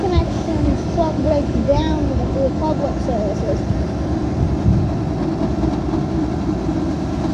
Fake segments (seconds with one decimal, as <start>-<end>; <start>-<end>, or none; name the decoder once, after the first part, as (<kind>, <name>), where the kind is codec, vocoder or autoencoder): 0.0-2.6 (codec, DAC)